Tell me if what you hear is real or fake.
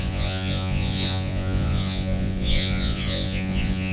fake